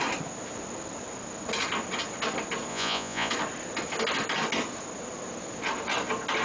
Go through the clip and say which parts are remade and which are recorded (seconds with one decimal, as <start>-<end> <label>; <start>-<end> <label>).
0.0-2.7 recorded; 2.7-3.3 remade; 3.3-6.4 recorded